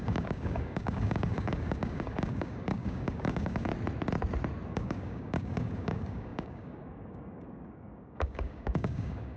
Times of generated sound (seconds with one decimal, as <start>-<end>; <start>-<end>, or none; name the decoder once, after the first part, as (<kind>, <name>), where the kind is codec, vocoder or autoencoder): 0.0-3.7 (codec, DAC); 4.7-9.4